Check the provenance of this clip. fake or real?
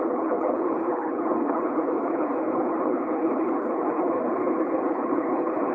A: fake